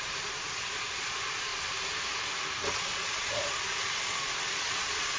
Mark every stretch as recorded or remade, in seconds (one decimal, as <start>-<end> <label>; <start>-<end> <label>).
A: 0.0-1.5 remade; 1.5-2.7 recorded; 2.7-5.2 remade